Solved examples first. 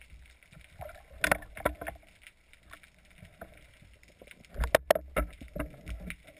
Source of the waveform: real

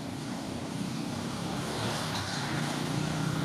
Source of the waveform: fake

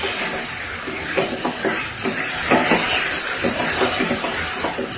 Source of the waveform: real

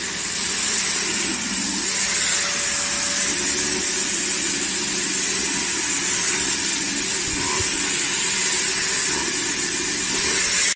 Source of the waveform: real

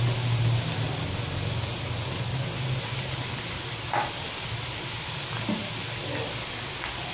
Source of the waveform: real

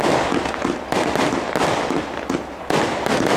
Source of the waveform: real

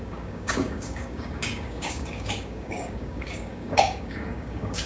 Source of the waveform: fake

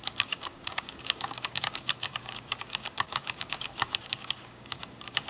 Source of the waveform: fake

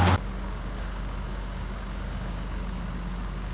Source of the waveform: fake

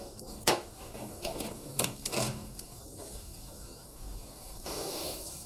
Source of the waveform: fake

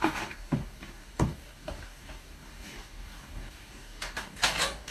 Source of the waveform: fake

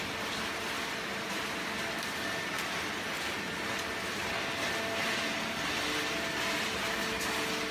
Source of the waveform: real